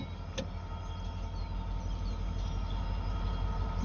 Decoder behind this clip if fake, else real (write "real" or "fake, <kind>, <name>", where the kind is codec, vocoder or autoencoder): real